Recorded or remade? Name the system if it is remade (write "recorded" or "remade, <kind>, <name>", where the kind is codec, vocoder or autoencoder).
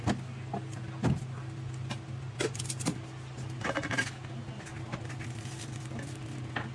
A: recorded